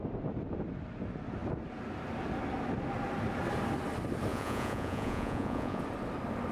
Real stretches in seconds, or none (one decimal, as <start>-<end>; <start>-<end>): 0.0-4.3; 5.8-6.5